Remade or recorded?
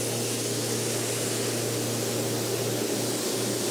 recorded